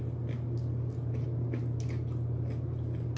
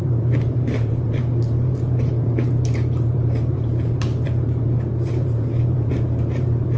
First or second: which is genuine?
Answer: first